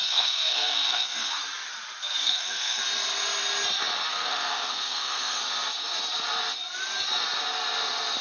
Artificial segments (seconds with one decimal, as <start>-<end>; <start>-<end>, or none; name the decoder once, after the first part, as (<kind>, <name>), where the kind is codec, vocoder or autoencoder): 0.0-1.4 (codec, SNAC); 2.2-2.8; 4.1-5.4